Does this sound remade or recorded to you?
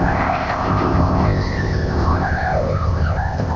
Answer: remade